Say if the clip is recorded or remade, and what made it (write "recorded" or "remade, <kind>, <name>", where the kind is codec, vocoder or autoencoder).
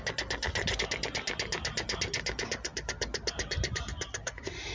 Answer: recorded